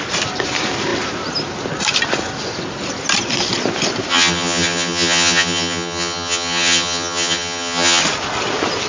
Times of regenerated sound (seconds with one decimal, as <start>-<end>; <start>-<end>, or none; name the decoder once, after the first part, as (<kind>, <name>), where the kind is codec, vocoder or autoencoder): 4.1-8.0 (vocoder, HiFi-GAN)

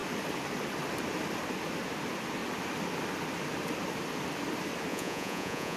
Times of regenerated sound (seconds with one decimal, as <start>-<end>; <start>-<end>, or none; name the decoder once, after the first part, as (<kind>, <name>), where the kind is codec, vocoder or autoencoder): 4.9-5.8 (vocoder, Vocos)

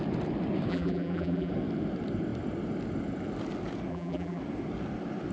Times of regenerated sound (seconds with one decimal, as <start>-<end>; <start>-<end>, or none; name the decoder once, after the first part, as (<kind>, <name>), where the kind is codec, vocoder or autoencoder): 0.7-1.5 (vocoder, BigVGAN v2); 3.9-4.4